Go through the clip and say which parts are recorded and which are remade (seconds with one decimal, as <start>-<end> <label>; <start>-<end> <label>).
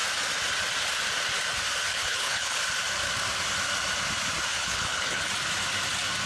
0.0-1.9 recorded; 1.9-2.6 remade; 2.6-4.5 recorded; 4.5-5.3 remade; 5.3-6.3 recorded